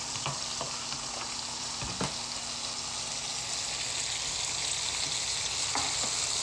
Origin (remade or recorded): recorded